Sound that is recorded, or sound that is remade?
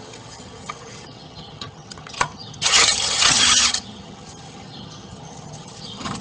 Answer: remade